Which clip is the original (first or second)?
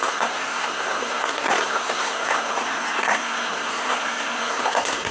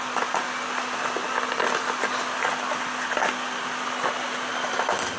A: second